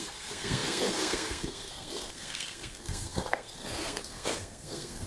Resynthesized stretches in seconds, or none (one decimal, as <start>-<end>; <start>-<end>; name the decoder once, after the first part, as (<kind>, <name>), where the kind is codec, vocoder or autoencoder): 0.0-5.1 (codec, SNAC)